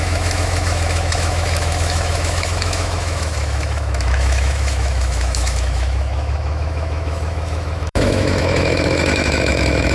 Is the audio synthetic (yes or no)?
yes